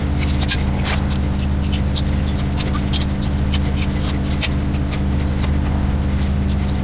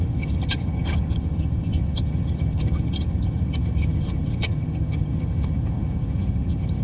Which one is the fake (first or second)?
second